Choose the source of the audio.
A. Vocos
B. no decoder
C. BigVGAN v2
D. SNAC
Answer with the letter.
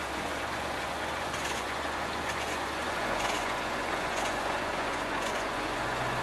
A